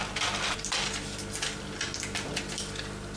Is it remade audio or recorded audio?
recorded